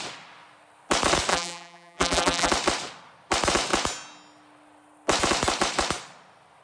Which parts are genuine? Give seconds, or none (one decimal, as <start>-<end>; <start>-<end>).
0.0-1.3; 2.5-6.6